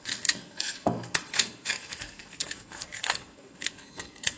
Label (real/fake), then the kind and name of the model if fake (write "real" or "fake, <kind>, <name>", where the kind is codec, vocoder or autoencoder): fake, codec, SNAC